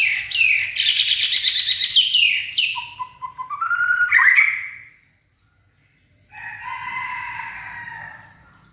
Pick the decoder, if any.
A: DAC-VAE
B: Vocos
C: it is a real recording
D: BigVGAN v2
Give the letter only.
C